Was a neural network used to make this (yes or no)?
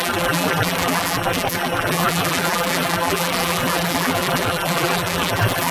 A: yes